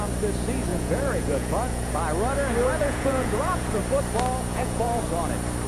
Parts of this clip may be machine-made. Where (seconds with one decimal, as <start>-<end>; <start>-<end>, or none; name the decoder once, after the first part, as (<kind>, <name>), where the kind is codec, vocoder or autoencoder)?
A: 0.7-1.9 (vocoder, Vocos); 2.8-3.8; 4.5-5.0